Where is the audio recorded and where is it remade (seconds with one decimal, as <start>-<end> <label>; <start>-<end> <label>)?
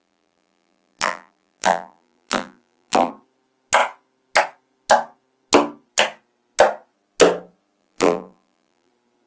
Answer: 0.0-3.1 remade; 3.1-7.8 recorded; 7.8-8.9 remade; 8.9-9.3 recorded